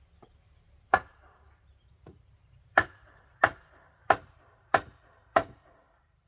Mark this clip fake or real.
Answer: fake